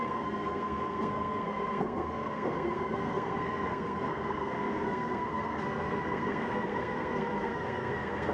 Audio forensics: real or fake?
fake